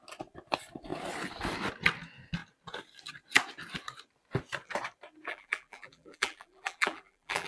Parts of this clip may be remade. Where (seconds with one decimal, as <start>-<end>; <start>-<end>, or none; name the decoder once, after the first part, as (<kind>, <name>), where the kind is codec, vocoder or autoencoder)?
5.3-7.5 (vocoder, BigVGAN v2)